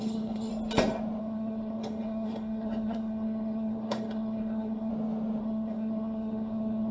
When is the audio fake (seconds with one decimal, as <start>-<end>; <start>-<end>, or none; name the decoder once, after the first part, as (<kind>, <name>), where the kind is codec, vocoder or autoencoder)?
0.0-0.5 (codec, SNAC); 1.2-4.9; 5.4-6.9